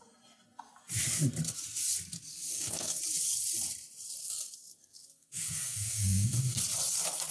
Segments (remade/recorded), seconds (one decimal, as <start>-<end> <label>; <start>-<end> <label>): 0.0-2.3 recorded; 2.3-3.0 remade; 3.0-4.2 recorded; 4.2-6.6 remade; 6.6-7.3 recorded